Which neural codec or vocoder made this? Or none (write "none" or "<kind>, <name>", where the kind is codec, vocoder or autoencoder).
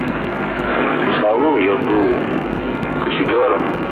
codec, SNAC